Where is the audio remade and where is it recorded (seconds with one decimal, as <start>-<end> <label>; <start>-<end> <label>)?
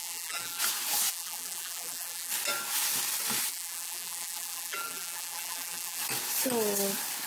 0.0-0.6 remade; 0.6-1.1 recorded; 1.1-2.3 remade; 2.3-3.5 recorded; 3.5-6.0 remade; 6.0-7.3 recorded